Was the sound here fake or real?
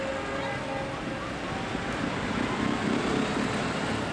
real